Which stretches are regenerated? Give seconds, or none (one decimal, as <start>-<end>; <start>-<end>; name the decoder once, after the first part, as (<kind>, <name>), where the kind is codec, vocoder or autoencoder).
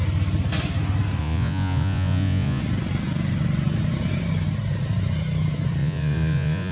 1.2-2.6 (vocoder, Vocos); 5.8-6.7